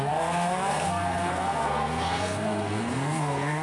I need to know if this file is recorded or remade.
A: remade